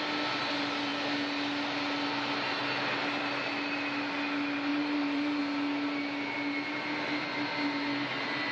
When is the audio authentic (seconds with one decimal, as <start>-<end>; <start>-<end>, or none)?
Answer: 0.0-4.7; 5.4-8.5